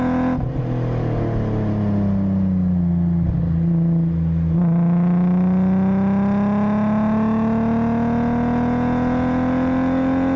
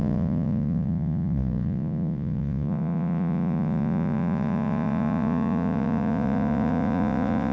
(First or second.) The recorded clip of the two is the first